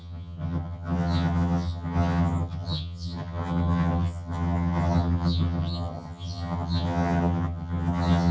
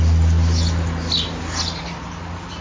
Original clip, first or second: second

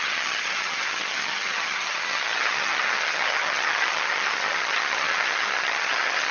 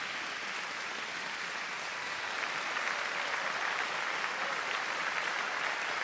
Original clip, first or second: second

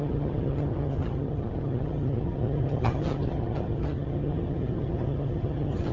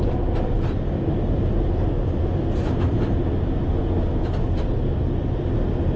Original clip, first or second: second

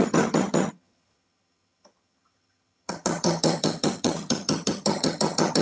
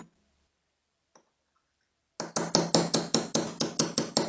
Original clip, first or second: second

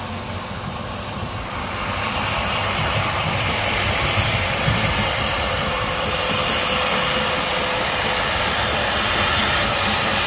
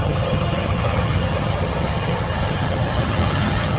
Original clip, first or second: first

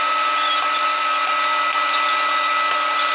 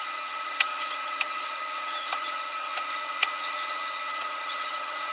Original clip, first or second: first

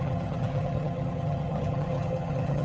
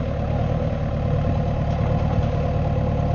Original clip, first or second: second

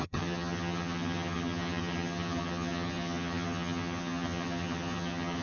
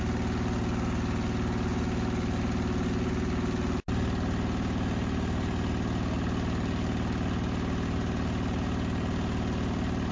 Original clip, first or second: second